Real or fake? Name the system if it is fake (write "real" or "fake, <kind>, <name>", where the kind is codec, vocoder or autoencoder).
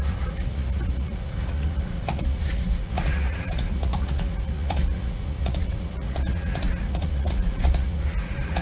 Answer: fake, vocoder, Vocos